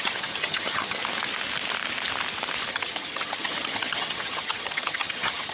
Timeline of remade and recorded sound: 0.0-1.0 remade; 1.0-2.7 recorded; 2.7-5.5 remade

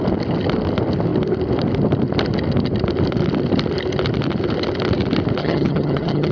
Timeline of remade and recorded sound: 0.0-5.4 recorded; 5.4-6.3 remade